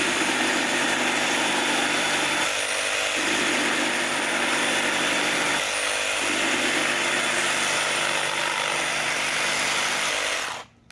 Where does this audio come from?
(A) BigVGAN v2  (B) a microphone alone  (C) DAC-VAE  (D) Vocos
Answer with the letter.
B